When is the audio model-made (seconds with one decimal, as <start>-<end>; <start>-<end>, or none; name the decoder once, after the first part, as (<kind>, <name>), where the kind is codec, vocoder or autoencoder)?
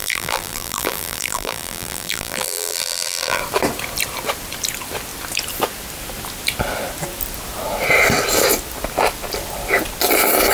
0.0-3.4 (vocoder, BigVGAN v2)